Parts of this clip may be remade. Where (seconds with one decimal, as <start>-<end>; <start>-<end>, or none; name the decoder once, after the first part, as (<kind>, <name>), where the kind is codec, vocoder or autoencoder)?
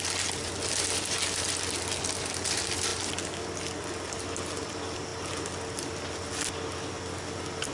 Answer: none